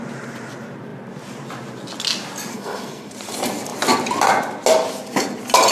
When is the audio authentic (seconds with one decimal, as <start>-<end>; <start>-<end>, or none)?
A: 0.0-2.5; 3.1-5.7